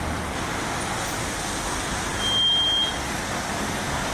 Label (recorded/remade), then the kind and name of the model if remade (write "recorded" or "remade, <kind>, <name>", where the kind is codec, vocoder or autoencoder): recorded